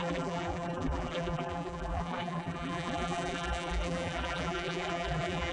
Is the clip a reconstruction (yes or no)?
yes